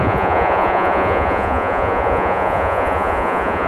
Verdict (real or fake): fake